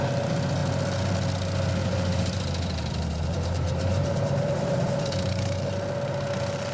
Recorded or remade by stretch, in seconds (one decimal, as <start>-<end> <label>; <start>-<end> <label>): 0.0-1.8 recorded; 1.8-5.6 remade; 5.6-6.7 recorded